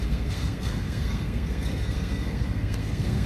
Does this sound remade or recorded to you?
remade